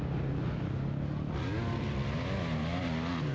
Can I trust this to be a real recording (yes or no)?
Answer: yes